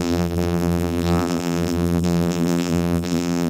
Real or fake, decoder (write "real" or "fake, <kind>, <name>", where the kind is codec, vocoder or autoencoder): fake, vocoder, BigVGAN v2